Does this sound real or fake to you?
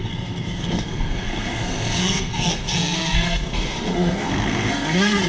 fake